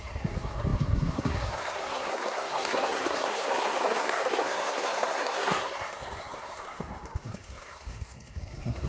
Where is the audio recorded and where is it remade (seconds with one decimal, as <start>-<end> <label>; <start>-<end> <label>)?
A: 0.0-8.9 remade